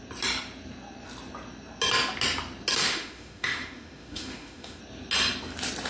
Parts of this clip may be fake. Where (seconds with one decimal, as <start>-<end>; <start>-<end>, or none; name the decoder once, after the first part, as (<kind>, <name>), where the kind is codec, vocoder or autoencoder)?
2.8-4.8 (autoencoder, DAC-VAE)